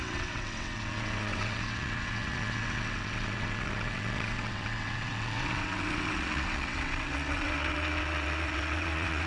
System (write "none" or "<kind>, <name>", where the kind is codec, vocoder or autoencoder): vocoder, WaveNeXt